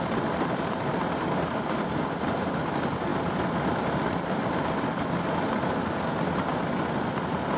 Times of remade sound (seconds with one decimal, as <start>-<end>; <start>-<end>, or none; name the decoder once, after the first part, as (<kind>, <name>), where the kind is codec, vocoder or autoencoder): none